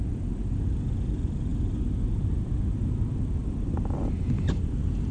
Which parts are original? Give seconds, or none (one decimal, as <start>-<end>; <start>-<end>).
0.0-5.1